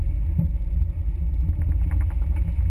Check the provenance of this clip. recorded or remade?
recorded